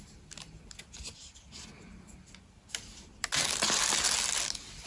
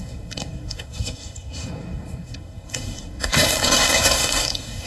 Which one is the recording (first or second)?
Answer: first